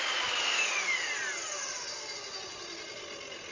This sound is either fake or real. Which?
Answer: real